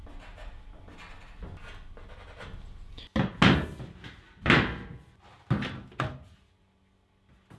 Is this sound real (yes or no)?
yes